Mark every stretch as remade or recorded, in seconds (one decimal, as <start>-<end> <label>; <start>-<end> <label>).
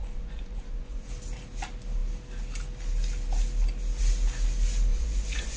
0.0-1.1 remade; 1.1-4.9 recorded; 4.9-5.6 remade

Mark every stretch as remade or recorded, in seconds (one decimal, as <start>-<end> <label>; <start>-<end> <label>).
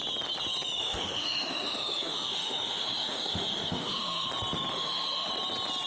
0.0-0.8 recorded; 0.8-4.3 remade; 4.3-4.7 recorded; 4.7-5.3 remade; 5.3-5.9 recorded